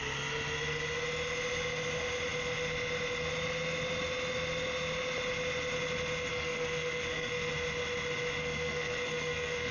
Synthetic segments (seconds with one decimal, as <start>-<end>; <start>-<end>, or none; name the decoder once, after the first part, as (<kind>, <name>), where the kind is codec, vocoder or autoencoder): 6.3-7.5 (codec, SNAC); 8.4-9.7